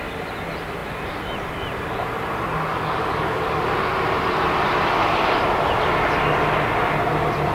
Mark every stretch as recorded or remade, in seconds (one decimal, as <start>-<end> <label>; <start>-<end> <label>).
0.0-2.7 recorded; 2.7-3.6 remade; 3.6-7.5 recorded